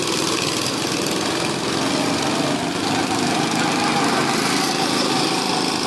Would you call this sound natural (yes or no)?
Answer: yes